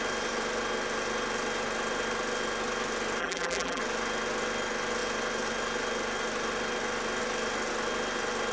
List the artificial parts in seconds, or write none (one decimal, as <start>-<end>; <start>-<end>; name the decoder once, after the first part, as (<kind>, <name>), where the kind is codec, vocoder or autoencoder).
3.2-3.8 (vocoder, BigVGAN v2)